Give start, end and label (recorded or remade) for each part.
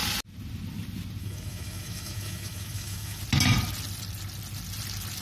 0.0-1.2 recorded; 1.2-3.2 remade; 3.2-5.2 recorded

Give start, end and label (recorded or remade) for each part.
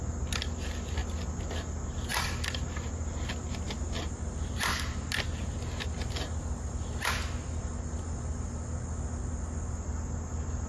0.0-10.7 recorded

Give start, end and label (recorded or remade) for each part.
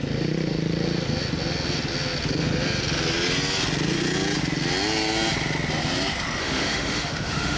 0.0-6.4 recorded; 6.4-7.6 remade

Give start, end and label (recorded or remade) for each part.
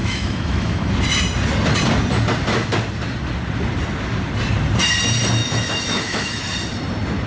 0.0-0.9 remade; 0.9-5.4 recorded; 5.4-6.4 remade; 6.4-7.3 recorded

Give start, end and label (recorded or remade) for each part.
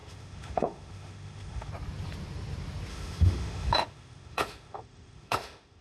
0.0-1.7 remade; 1.7-2.9 recorded; 2.9-5.8 remade